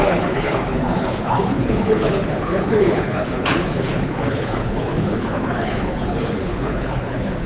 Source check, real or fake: fake